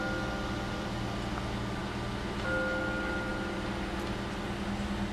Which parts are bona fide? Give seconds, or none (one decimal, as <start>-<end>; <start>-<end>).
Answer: 0.0-5.1